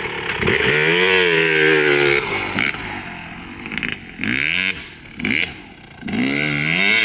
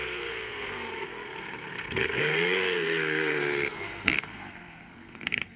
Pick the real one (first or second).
first